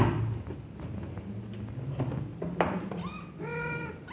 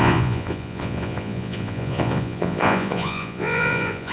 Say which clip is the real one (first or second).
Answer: first